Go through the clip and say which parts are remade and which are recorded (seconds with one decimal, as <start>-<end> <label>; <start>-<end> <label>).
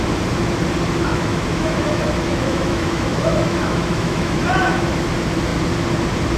0.0-1.1 recorded; 1.1-4.9 remade; 4.9-6.4 recorded